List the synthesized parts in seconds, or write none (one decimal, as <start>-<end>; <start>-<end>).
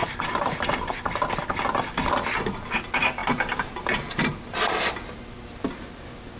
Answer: 0.0-0.6; 3.2-4.3